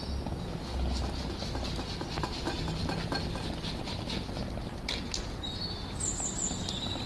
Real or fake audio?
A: real